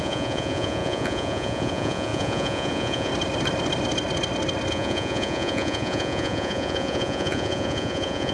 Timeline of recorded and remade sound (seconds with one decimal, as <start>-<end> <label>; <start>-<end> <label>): 0.0-3.1 remade; 3.1-4.7 recorded; 4.7-8.3 remade